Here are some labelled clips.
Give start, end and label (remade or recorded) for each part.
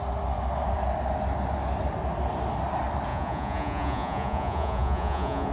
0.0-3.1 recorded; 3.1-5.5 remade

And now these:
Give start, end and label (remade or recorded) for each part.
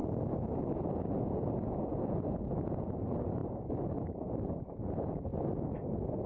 0.0-1.3 recorded; 1.3-3.4 remade; 3.4-4.6 recorded; 4.6-5.3 remade; 5.3-6.3 recorded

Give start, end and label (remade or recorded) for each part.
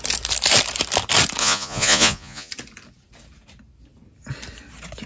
0.0-1.4 recorded; 1.4-2.5 remade; 2.5-5.1 recorded